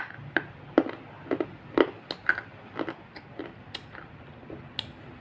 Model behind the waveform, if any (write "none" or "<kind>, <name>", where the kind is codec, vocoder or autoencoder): none